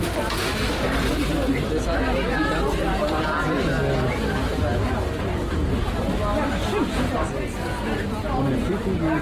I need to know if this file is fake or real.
real